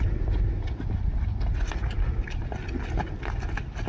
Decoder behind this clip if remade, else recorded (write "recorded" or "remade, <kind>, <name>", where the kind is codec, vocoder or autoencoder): recorded